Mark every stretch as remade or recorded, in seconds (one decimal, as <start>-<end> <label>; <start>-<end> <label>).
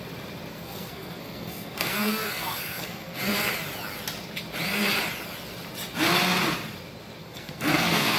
0.0-0.5 recorded; 0.5-3.2 remade; 3.2-7.2 recorded; 7.2-8.2 remade